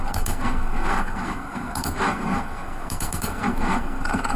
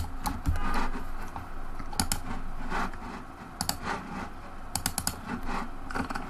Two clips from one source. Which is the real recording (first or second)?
second